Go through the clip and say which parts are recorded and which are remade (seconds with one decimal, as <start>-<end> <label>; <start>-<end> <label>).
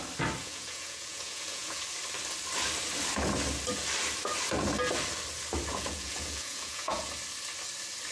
0.0-0.4 recorded; 0.4-1.8 remade; 1.8-5.7 recorded; 5.7-7.1 remade; 7.1-8.1 recorded